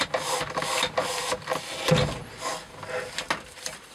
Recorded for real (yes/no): yes